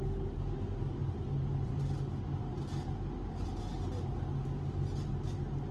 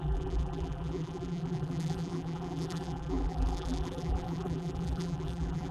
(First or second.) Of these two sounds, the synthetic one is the second